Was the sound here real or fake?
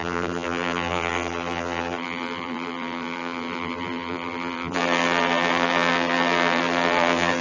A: fake